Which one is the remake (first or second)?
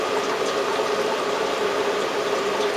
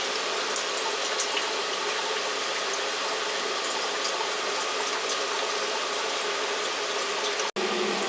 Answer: first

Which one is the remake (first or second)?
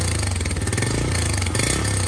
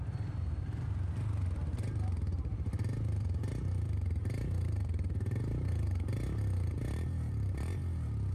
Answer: second